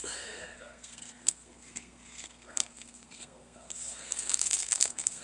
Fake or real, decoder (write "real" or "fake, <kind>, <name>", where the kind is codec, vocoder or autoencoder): fake, codec, SNAC